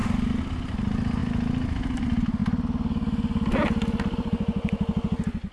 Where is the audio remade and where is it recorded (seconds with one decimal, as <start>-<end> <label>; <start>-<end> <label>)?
0.0-5.5 recorded